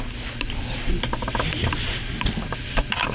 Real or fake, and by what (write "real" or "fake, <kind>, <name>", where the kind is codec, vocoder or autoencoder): real